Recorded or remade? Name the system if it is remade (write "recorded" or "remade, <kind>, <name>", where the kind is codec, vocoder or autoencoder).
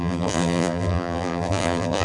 remade, vocoder, BigVGAN v2